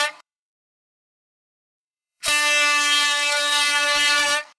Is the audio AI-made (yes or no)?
yes